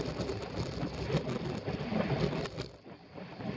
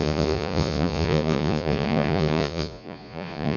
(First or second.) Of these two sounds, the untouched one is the first